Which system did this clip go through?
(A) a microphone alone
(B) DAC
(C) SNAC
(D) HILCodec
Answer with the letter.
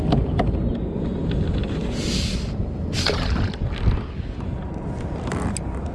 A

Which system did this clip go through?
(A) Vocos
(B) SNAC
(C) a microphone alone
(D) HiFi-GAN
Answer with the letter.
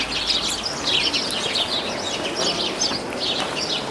C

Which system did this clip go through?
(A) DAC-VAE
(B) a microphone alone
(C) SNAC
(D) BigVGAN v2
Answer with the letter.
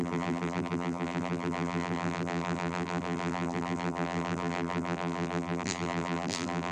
D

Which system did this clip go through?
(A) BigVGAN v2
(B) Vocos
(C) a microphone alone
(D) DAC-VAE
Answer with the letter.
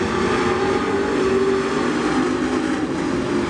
C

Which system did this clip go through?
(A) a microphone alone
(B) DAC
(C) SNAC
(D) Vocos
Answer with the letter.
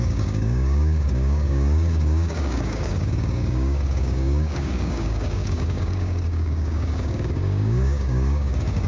B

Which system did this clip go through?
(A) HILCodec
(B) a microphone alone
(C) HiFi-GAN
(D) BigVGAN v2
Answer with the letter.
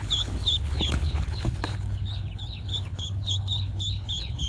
A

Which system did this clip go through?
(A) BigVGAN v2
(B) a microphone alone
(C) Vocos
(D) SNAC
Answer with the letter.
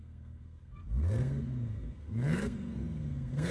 D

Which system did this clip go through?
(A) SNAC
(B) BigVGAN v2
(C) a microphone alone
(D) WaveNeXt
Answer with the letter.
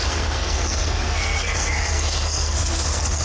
A